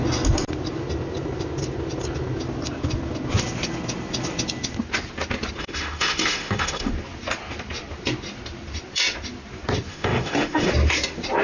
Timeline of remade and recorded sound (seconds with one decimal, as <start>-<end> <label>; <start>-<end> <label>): 0.0-5.6 recorded; 5.6-6.9 remade; 6.9-9.9 recorded; 9.9-10.7 remade; 10.7-11.4 recorded